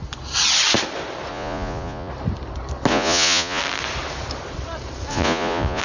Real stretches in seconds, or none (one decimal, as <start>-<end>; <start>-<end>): 0.0-1.3; 2.1-2.9; 3.6-5.1